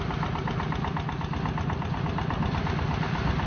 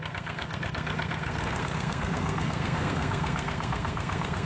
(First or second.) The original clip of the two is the first